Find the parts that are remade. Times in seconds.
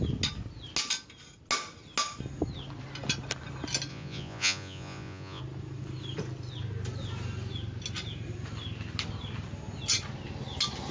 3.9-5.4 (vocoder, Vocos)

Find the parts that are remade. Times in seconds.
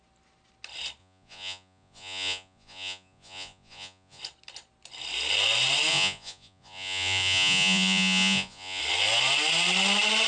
1.0-4.2 (vocoder, Vocos); 5.9-8.8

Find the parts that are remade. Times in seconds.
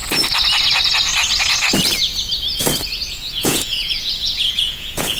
3.1-5.2 (vocoder, Vocos)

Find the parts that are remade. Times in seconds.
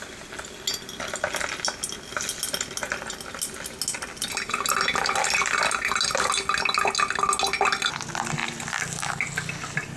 none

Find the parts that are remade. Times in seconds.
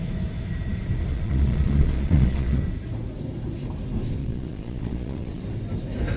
1.1-2.6 (vocoder, Vocos); 4.2-5.4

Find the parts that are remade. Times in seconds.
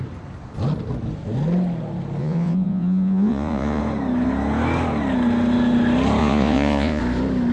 2.2-3.8 (vocoder, Vocos); 6.2-7.0